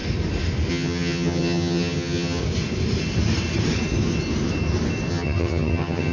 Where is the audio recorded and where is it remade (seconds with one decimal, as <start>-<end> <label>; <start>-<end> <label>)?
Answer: 0.0-0.7 recorded; 0.7-2.4 remade; 2.4-5.1 recorded; 5.1-6.1 remade